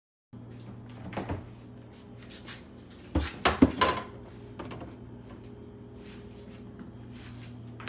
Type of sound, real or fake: real